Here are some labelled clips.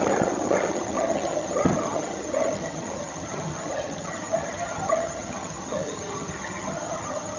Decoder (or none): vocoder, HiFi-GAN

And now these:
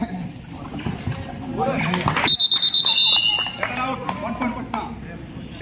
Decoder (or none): none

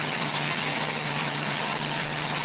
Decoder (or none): vocoder, HiFi-GAN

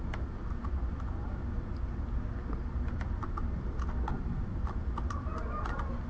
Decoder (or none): none